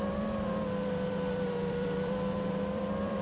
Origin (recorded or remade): remade